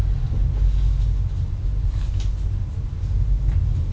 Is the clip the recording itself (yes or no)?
yes